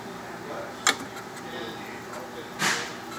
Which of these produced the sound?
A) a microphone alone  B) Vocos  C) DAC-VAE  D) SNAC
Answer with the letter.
A